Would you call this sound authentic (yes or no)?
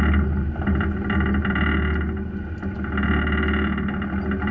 yes